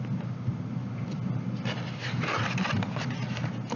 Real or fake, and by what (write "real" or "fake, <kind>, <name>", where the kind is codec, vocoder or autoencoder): real